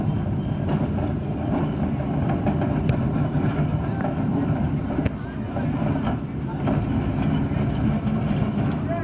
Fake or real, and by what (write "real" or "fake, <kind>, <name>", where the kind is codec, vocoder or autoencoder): real